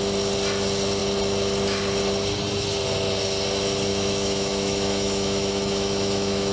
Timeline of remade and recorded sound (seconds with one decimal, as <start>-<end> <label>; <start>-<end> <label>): 0.0-3.9 recorded; 3.9-6.5 remade

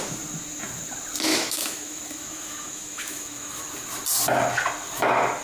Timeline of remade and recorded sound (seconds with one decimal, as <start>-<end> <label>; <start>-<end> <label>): 0.0-1.3 recorded; 1.3-3.6 remade; 3.6-5.4 recorded